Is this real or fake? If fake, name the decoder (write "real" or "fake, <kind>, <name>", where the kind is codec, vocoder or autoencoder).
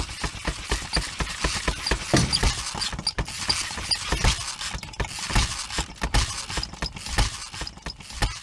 real